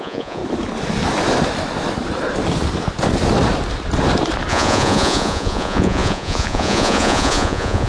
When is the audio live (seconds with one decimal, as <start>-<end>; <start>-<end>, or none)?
0.4-4.5